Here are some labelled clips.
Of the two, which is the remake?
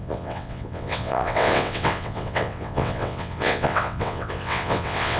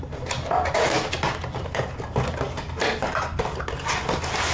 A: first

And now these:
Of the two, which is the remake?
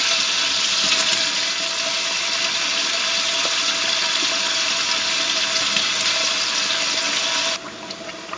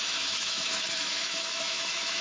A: second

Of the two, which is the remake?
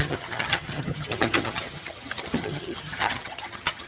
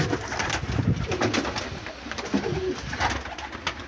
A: first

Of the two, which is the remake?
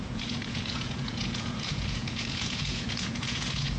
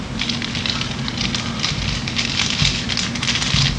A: first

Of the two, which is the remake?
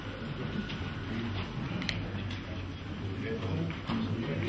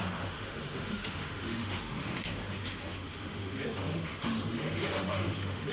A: second